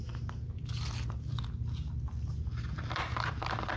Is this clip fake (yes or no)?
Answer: no